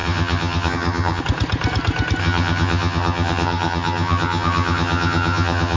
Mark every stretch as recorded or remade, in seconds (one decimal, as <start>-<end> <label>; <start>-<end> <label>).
0.0-1.2 remade; 1.2-2.2 recorded; 2.2-5.8 remade